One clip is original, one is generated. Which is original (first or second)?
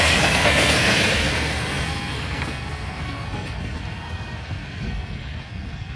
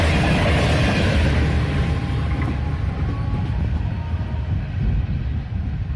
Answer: second